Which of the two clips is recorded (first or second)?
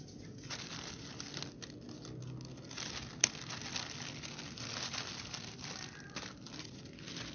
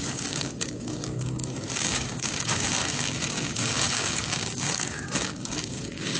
first